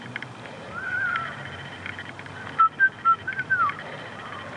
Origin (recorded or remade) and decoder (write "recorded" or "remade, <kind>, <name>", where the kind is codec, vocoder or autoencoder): recorded